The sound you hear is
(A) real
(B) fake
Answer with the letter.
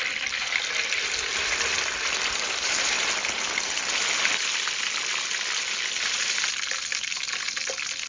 A